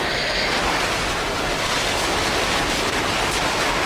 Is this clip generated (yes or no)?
no